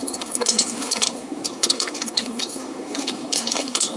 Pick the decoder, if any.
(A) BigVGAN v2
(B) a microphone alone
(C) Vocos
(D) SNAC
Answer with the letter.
D